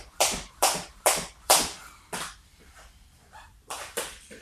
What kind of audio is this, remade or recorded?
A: remade